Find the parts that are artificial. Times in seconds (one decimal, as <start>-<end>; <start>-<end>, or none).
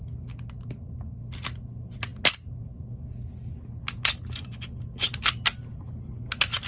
none